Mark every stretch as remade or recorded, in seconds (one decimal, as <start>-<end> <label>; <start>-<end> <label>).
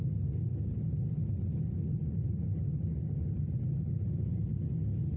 0.0-5.2 recorded